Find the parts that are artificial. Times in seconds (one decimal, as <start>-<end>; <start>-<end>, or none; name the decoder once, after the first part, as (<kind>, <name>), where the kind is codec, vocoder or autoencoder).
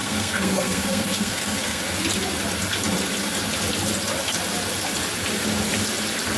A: 0.0-1.8 (codec, SNAC)